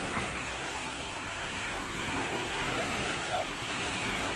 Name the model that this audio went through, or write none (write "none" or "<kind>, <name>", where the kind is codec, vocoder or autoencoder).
codec, SNAC